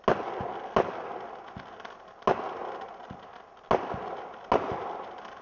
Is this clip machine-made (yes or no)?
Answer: no